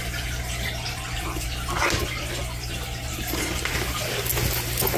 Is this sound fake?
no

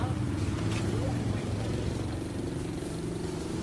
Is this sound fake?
yes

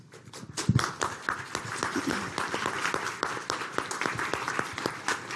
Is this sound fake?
yes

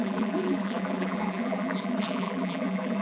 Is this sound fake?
yes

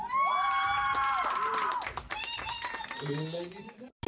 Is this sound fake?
no